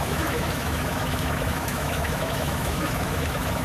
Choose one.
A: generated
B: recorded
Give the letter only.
A